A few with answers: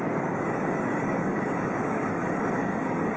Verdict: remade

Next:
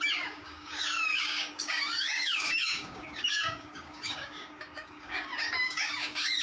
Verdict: remade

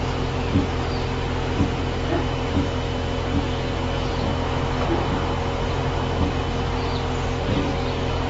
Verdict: recorded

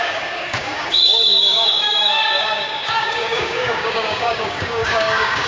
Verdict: remade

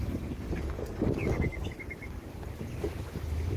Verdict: remade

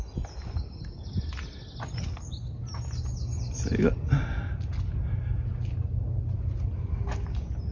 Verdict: recorded